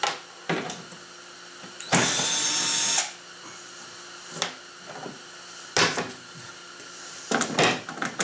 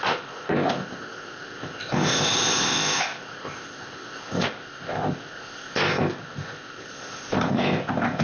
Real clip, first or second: first